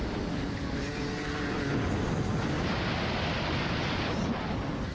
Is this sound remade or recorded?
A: recorded